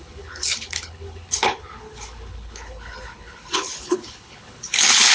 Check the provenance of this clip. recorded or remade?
remade